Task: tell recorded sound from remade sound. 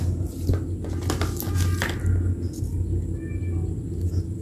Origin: recorded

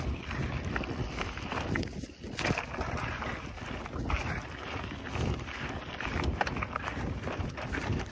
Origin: recorded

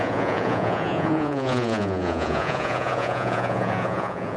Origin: remade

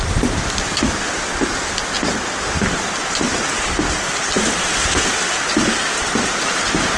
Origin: recorded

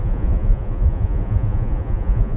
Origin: remade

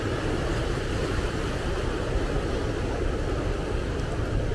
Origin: recorded